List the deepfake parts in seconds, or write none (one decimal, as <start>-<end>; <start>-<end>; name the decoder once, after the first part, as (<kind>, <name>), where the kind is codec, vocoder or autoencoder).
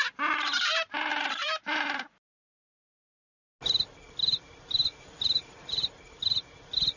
1.1-3.3 (vocoder, BigVGAN v2); 4.8-6.4